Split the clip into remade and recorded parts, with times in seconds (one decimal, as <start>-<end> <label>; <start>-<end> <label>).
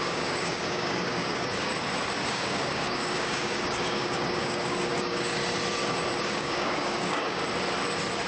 0.0-1.7 remade; 1.7-2.3 recorded; 2.3-5.4 remade; 5.4-6.2 recorded; 6.2-7.4 remade; 7.4-8.3 recorded